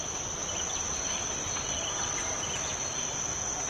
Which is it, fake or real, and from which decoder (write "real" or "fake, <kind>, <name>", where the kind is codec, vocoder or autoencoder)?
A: real